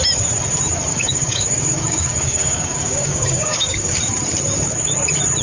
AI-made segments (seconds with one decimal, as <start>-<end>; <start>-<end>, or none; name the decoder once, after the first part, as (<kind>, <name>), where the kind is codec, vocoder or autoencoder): 0.9-4.0 (codec, DAC)

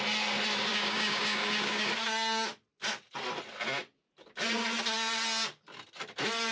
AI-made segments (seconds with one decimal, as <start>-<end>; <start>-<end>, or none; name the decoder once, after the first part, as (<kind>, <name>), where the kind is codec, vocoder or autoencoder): 0.7-1.9 (codec, DAC)

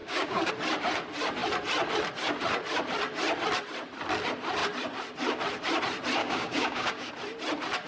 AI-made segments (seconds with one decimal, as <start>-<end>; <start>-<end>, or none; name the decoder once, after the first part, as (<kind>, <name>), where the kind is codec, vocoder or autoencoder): 0.0-0.5 (codec, DAC); 6.2-7.1

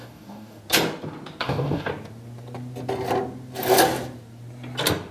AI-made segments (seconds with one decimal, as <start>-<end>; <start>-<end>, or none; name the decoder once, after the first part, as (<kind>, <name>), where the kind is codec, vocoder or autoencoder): 0.0-0.6 (codec, DAC); 1.4-1.9

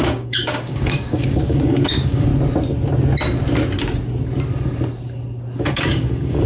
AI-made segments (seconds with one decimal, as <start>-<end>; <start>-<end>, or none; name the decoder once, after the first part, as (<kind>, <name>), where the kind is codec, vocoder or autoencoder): 0.0-2.3 (codec, DAC); 5.7-6.5

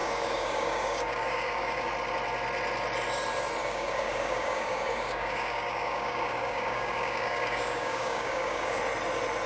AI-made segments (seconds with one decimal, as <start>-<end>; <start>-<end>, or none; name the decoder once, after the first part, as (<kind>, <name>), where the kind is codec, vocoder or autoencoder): 0.0-1.9 (codec, DAC); 3.6-8.8

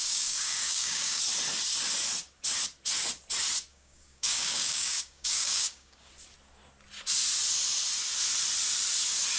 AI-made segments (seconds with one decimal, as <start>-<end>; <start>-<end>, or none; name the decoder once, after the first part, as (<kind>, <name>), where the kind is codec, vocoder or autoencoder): 0.0-1.2 (codec, DAC); 3.7-6.1

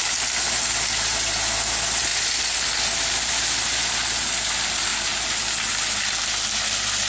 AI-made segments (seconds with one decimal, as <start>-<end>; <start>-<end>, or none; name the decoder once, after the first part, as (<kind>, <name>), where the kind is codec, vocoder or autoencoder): none